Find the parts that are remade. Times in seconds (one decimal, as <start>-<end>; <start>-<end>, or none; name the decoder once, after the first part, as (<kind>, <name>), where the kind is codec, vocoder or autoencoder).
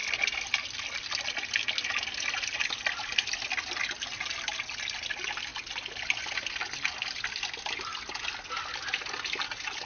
none